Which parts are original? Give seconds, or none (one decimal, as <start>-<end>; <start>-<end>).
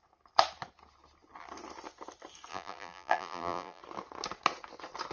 0.0-2.5; 3.8-5.1